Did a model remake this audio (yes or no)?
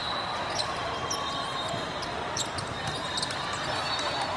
yes